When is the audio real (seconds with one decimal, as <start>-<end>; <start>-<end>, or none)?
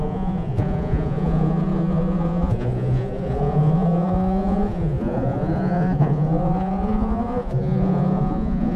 none